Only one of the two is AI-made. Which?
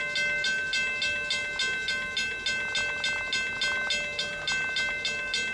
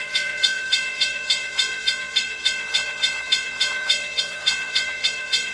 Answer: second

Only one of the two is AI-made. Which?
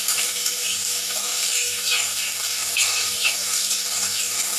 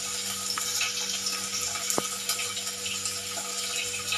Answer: first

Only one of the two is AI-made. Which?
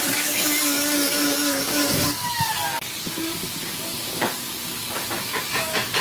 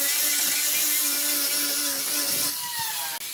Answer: first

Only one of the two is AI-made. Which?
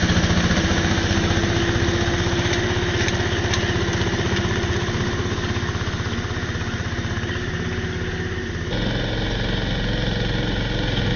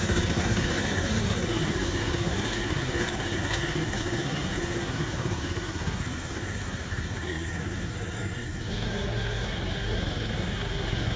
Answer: second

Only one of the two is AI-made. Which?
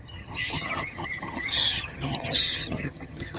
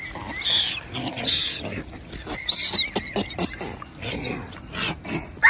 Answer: first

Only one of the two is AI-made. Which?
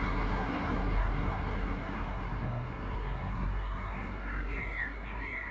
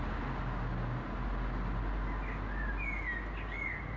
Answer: first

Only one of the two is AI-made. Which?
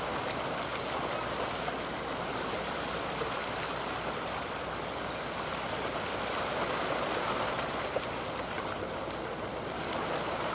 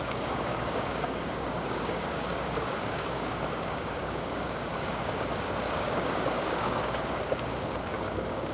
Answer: second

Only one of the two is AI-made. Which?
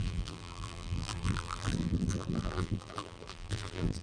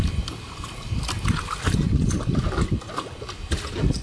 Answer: first